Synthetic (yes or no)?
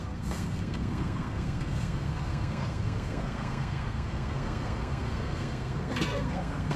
yes